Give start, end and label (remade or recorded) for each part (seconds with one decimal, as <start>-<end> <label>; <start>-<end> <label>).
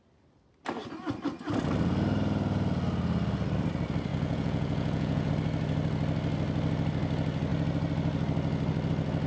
0.0-4.1 recorded; 4.1-5.3 remade; 5.3-9.3 recorded